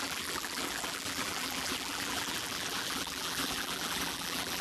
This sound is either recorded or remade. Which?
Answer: remade